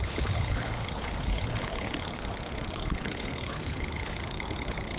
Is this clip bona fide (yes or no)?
no